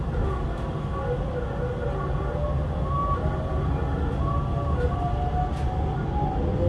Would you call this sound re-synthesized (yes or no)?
no